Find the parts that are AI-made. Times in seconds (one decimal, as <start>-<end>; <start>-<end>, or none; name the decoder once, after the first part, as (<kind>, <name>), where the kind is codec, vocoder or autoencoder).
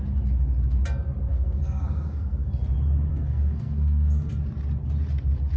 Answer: 1.3-2.5 (codec, SNAC); 3.1-4.3